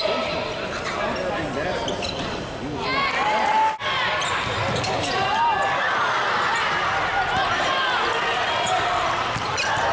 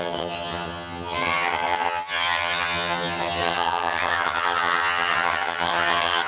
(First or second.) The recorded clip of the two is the first